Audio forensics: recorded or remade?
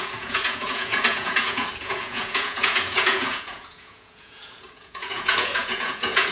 remade